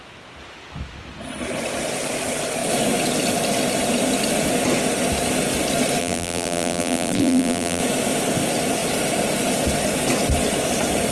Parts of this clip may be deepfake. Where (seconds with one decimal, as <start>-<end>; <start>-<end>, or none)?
6.0-7.8

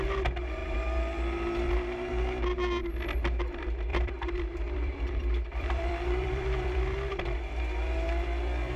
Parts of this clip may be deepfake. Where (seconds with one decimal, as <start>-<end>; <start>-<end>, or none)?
3.9-7.2